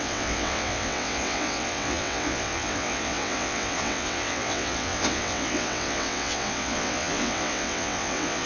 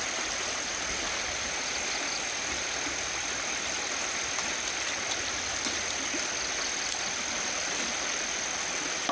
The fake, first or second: first